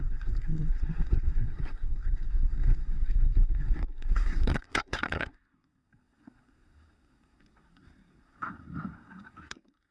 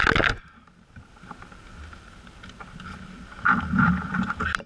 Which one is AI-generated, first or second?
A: first